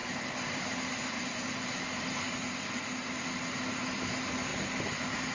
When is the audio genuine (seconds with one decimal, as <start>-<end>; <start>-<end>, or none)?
0.0-5.3